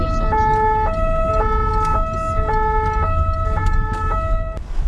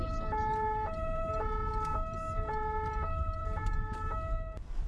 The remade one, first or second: second